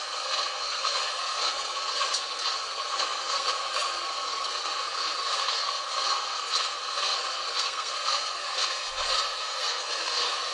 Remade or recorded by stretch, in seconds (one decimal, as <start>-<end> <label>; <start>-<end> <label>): 0.0-10.5 remade